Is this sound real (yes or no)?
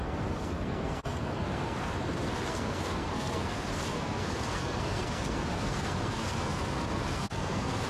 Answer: no